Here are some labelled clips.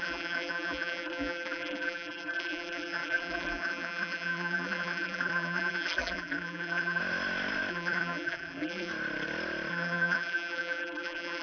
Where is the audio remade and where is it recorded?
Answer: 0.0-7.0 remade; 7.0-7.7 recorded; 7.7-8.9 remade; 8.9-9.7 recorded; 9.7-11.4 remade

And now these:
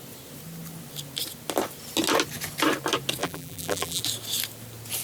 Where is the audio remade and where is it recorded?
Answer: 0.0-3.2 recorded; 3.2-4.0 remade; 4.0-5.0 recorded

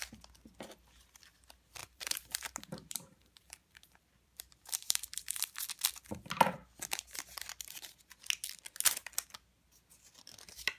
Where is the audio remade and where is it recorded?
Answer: 0.0-1.8 recorded; 1.8-5.6 remade; 5.6-10.8 recorded